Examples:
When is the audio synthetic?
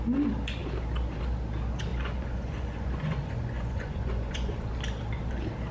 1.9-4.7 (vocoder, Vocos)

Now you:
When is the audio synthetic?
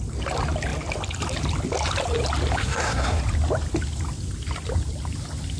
2.6-3.2 (codec, SNAC)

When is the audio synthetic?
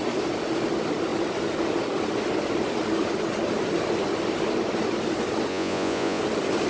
5.5-6.2 (vocoder, Vocos)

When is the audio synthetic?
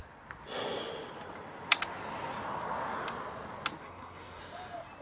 3.8-4.4 (codec, SNAC)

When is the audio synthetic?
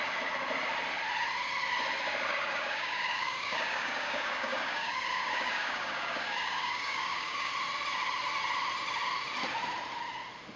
2.3-7.5 (codec, DAC)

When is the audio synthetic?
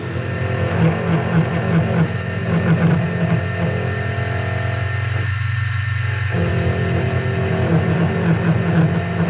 none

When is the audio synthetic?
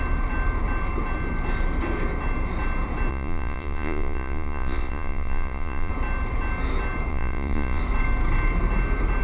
3.1-5.9 (vocoder, Vocos); 7.1-7.8